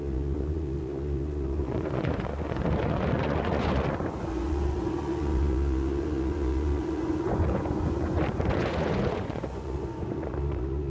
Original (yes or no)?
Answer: no